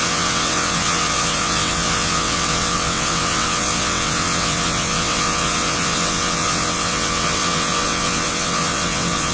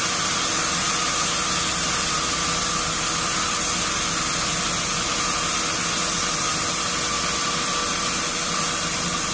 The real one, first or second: second